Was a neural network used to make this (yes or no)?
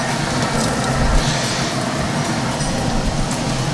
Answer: no